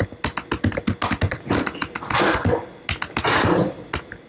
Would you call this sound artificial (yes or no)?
no